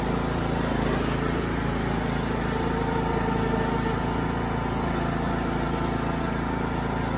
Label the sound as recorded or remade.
recorded